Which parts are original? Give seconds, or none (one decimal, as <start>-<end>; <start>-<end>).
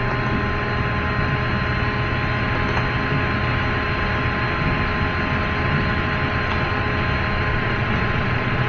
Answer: 0.0-7.5